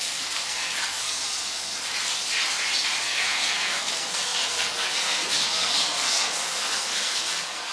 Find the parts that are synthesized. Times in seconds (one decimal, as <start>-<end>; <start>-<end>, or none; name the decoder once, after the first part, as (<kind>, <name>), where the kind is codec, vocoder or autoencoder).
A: 0.0-1.7 (codec, SNAC); 3.0-7.7